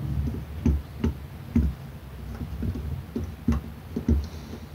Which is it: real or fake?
real